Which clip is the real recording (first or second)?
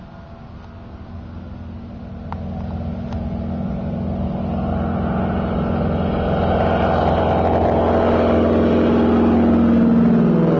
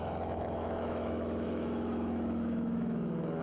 first